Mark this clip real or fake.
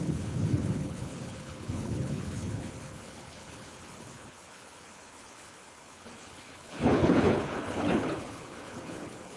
fake